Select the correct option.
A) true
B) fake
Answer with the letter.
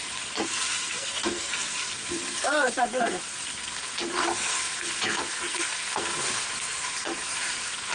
B